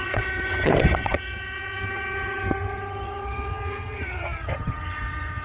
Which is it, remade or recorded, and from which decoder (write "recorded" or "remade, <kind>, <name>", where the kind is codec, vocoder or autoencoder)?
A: remade, vocoder, HiFi-GAN